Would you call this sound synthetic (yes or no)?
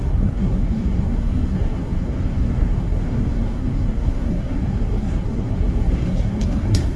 yes